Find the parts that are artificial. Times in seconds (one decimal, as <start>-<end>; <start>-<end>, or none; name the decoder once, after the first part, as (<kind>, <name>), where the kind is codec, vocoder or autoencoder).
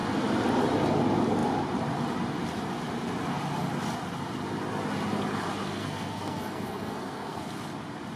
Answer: 5.8-7.4 (codec, SNAC)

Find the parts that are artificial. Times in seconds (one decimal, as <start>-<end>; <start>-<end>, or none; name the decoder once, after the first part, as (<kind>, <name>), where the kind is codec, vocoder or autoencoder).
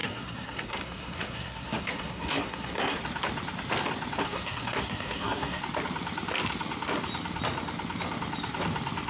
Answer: 0.0-3.0 (codec, SNAC); 4.2-5.6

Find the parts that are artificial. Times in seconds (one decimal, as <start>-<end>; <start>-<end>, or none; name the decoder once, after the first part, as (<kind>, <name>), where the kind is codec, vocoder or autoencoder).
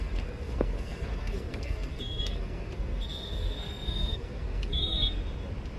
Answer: 0.0-5.2 (codec, SNAC)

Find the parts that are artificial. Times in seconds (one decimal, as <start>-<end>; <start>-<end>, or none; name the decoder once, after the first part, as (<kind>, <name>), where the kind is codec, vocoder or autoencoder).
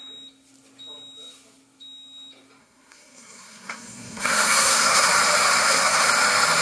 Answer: 2.6-5.1 (codec, SNAC); 5.6-6.1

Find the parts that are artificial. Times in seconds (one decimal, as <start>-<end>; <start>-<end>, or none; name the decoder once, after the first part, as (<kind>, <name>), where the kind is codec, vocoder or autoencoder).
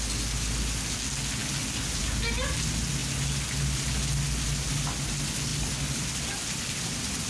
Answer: none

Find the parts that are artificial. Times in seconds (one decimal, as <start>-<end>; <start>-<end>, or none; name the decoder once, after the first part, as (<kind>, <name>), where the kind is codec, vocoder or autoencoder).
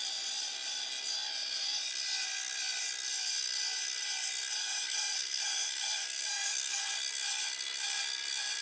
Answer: 4.6-6.8 (codec, SNAC)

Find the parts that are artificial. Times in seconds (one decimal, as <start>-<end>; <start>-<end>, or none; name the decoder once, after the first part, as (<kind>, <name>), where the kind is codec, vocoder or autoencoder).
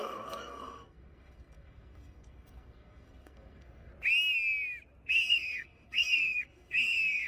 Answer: 0.0-3.9 (codec, SNAC); 5.1-7.3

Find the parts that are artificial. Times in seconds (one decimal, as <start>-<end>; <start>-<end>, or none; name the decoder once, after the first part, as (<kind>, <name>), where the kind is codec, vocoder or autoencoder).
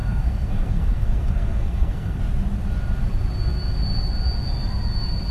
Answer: 0.0-2.2 (codec, SNAC)